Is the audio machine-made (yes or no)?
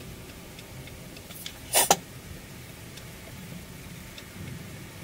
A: no